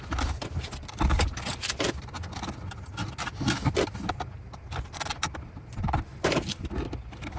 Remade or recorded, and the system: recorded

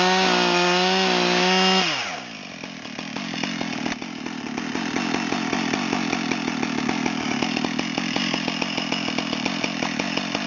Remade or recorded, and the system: recorded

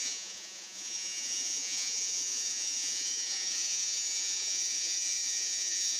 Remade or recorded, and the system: remade, vocoder, Vocos